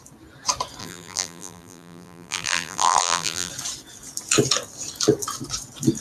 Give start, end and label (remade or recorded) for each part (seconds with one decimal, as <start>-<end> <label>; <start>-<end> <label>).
0.0-0.8 recorded; 0.8-3.5 remade; 3.5-6.0 recorded